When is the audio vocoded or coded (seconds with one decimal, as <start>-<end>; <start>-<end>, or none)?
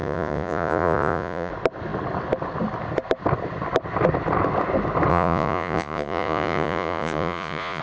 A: 0.0-1.5; 5.1-7.8